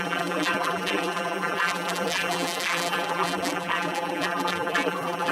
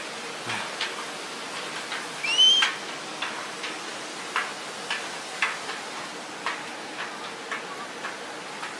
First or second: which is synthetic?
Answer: first